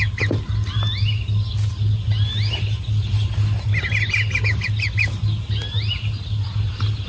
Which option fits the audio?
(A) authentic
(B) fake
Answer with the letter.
A